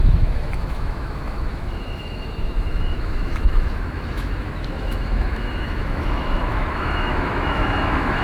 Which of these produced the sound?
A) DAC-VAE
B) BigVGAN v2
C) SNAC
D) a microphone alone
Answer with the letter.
A